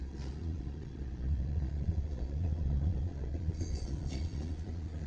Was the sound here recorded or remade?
remade